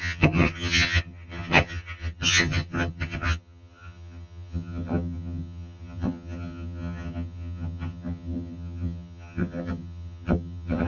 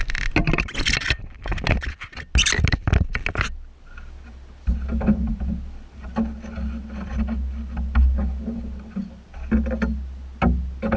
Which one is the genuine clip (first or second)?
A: second